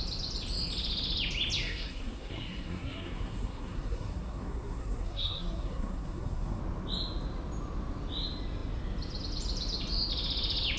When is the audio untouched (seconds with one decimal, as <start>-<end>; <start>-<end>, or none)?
0.0-1.6; 6.6-10.8